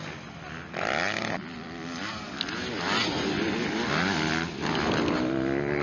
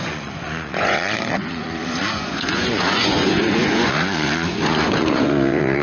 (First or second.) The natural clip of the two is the first